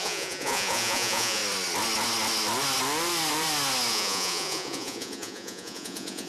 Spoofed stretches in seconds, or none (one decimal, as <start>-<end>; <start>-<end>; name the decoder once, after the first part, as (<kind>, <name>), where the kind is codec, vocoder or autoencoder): 0.0-1.4 (vocoder, Vocos); 3.9-6.3